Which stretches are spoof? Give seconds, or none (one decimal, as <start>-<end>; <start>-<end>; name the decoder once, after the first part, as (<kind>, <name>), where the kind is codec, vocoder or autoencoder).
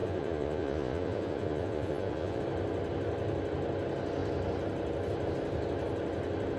0.0-2.4 (vocoder, Vocos)